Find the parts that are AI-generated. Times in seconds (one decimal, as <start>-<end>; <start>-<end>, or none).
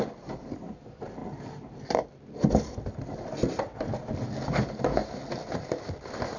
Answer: 5.0-6.4